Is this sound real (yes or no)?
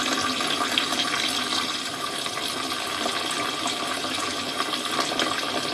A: no